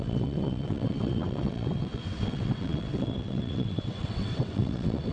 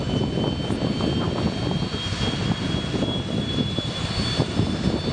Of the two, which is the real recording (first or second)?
second